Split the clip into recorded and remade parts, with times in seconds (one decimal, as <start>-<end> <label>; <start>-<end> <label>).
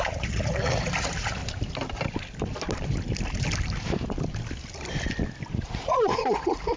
0.0-1.4 remade; 1.4-5.5 recorded; 5.5-6.8 remade